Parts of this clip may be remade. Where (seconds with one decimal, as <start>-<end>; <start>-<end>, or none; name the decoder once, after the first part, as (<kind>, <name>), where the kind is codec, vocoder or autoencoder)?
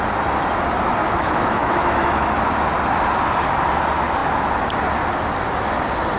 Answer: 1.0-2.4 (autoencoder, DAC-VAE)